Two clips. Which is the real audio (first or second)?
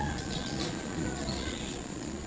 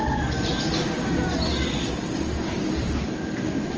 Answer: second